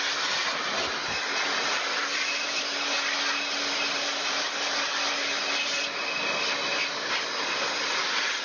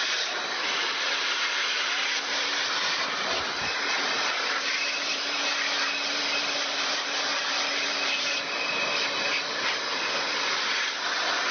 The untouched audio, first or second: first